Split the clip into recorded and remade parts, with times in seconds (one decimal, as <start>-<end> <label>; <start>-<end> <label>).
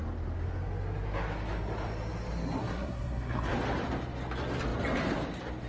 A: 0.0-2.6 recorded; 2.6-3.5 remade; 3.5-5.7 recorded